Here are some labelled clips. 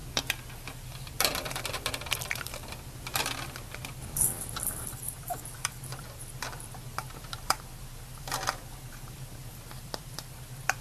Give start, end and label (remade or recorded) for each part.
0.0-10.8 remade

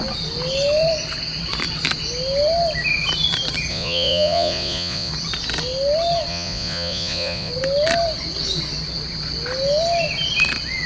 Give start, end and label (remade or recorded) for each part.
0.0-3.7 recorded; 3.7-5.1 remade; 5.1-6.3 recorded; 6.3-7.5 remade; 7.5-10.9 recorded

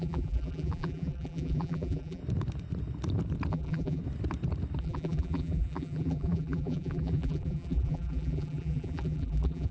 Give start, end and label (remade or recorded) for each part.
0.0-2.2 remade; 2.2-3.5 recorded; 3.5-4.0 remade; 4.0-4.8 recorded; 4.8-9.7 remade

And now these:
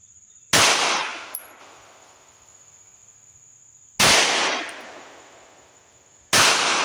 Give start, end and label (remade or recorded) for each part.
0.0-1.1 recorded; 1.1-1.7 remade; 1.7-6.8 recorded